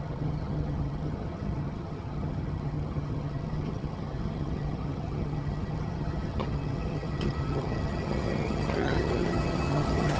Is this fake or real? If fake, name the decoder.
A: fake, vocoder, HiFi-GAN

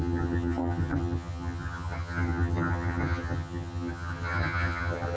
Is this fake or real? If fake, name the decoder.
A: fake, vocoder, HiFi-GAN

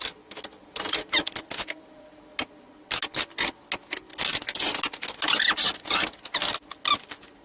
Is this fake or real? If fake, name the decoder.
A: real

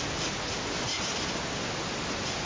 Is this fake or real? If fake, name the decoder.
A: real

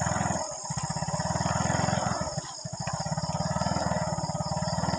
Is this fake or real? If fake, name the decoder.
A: real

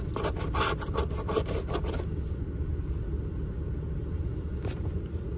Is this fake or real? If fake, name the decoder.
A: real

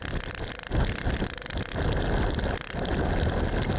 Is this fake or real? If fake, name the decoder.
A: real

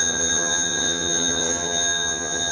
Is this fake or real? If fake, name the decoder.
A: fake, vocoder, HiFi-GAN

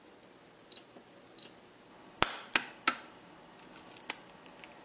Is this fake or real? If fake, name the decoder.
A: real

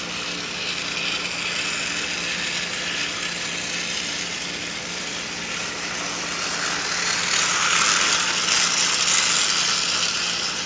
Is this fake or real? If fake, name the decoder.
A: real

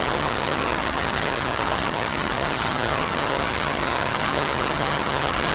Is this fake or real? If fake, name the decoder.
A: fake, vocoder, HiFi-GAN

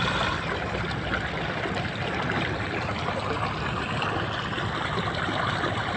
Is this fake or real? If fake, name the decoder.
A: real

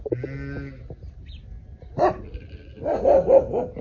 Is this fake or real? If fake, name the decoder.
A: real